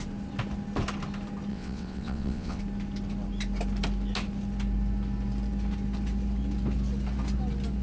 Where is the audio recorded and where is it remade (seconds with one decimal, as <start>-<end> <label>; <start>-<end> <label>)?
0.0-1.5 recorded; 1.5-2.6 remade; 2.6-7.8 recorded